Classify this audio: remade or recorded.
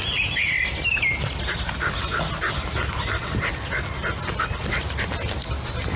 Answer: recorded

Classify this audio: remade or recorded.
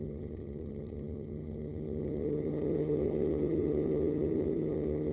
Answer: remade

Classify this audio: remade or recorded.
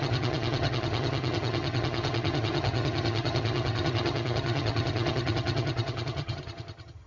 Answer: remade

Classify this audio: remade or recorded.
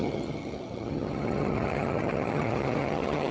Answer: remade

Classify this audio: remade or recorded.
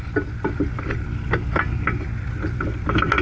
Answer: recorded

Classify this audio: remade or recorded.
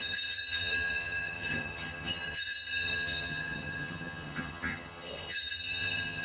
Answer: remade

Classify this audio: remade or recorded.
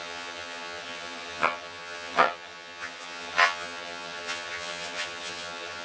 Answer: remade